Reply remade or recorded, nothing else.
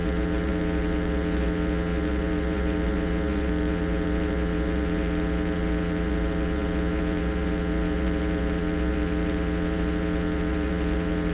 remade